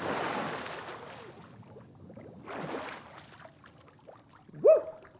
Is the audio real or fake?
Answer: real